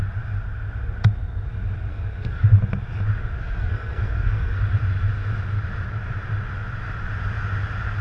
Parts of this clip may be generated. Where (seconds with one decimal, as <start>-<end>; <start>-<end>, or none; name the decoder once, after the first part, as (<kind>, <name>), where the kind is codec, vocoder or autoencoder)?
1.9-2.5 (codec, SNAC); 3.4-4.6